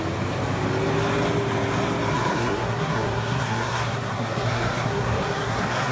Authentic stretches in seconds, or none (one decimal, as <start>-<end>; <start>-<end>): 0.0-2.1